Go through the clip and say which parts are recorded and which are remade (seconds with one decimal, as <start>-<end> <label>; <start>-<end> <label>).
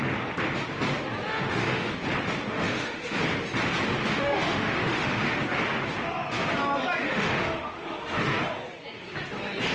0.0-1.3 recorded; 1.3-1.9 remade; 1.9-2.5 recorded; 2.5-3.2 remade; 3.2-4.0 recorded; 4.0-5.4 remade; 5.4-7.0 recorded; 7.0-8.4 remade; 8.4-9.7 recorded